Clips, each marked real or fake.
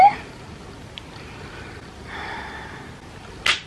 real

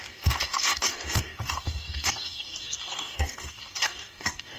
fake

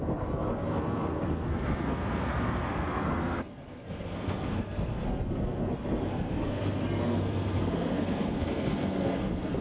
fake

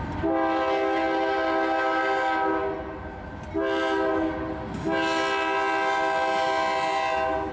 real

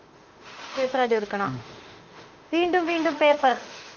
fake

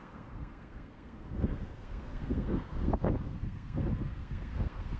fake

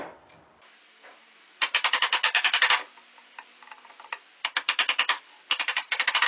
real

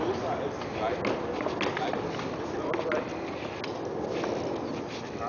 real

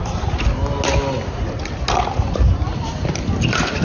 real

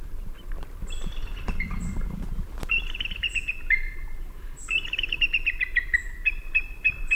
fake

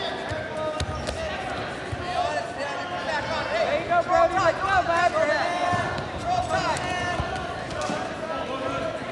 real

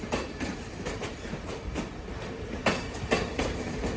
fake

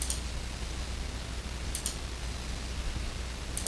real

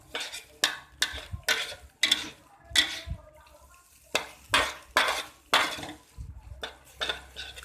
real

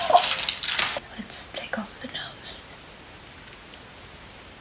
real